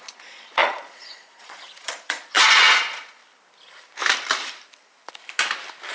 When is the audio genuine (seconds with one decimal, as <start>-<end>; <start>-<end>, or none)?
3.2-5.9